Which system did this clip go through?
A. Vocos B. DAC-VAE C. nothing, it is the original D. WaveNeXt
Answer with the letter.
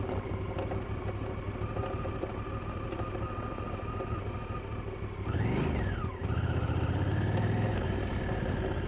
C